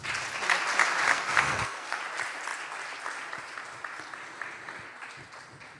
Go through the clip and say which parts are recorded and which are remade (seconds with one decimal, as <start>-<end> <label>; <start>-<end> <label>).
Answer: 0.0-1.1 recorded; 1.1-2.0 remade; 2.0-5.8 recorded